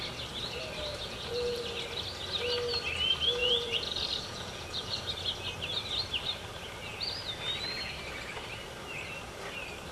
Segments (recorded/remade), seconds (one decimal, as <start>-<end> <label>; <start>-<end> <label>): 0.0-0.9 recorded; 0.9-1.6 remade; 1.6-3.4 recorded; 3.4-4.9 remade; 4.9-9.9 recorded